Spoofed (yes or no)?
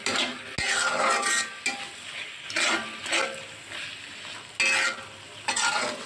no